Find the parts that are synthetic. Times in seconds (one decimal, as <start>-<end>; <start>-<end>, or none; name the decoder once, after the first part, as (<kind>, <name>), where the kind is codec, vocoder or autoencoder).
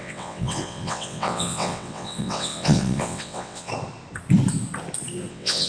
0.0-3.7 (vocoder, WaveNeXt); 5.3-5.7